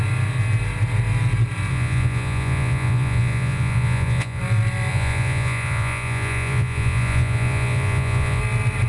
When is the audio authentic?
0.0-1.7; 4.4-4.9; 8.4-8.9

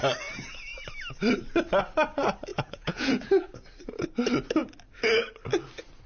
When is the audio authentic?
0.0-2.5; 3.3-6.1

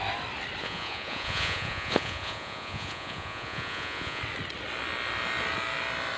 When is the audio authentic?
0.0-0.6; 4.2-6.2